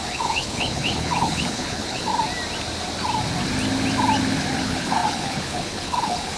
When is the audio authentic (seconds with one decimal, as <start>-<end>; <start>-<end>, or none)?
2.1-4.6